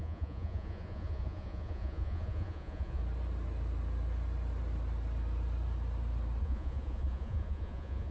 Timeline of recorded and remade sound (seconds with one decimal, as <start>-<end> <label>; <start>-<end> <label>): 0.0-3.0 remade; 3.0-6.4 recorded; 6.4-8.1 remade